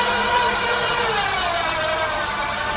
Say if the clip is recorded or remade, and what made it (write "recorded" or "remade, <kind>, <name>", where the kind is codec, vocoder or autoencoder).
recorded